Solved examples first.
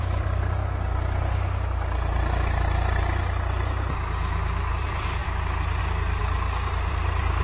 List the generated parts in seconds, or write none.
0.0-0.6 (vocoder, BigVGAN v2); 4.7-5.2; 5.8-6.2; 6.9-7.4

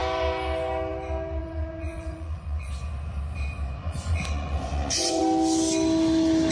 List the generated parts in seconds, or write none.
1.4-2.7 (vocoder, Vocos); 3.8-5.2

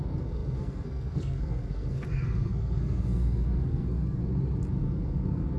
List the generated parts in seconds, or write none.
0.0-4.2 (codec, SNAC); 4.7-5.6

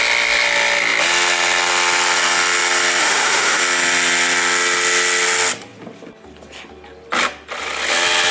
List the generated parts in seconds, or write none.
3.0-3.6 (autoencoder, DAC-VAE)

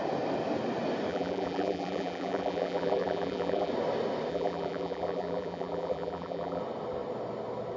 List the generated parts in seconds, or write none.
1.1-3.7 (vocoder, BigVGAN v2); 4.3-6.6

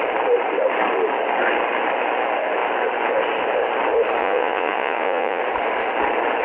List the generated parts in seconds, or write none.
4.2-5.4 (vocoder, Vocos)

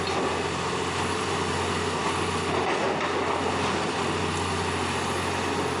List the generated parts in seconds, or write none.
none

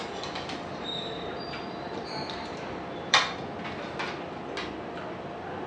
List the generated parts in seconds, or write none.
0.7-3.2 (vocoder, BigVGAN v2)